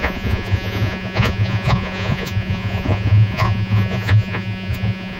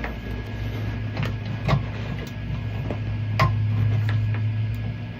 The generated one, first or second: first